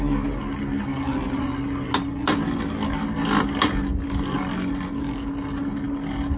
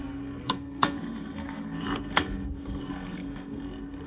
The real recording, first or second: first